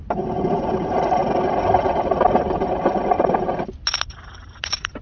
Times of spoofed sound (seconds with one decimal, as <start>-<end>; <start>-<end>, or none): none